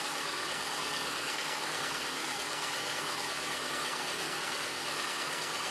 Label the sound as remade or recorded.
remade